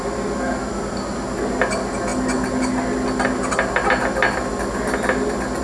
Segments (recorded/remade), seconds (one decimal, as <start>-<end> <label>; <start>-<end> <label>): 0.0-5.6 recorded

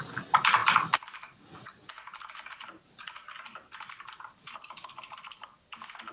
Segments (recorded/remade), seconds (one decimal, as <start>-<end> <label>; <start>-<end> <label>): 0.0-6.1 recorded